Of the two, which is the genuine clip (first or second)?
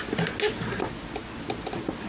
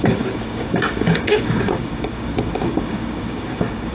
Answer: first